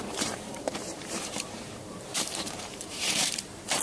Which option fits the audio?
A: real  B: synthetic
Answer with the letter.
B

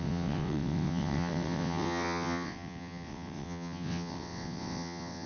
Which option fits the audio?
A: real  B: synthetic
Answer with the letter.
B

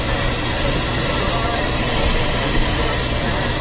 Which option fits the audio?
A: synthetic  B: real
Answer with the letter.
A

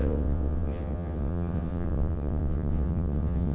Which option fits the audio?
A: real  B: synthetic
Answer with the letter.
B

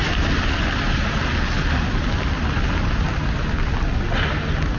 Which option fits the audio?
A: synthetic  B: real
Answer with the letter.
B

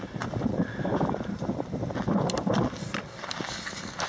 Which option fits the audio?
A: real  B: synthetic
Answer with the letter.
A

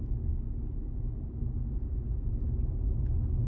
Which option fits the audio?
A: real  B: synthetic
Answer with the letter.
A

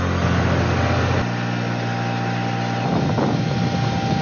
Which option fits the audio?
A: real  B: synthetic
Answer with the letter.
A